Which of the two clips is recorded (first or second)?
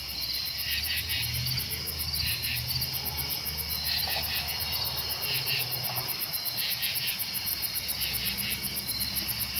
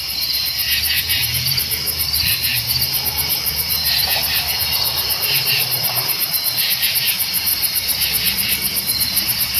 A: first